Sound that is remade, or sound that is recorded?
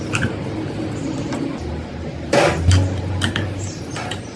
recorded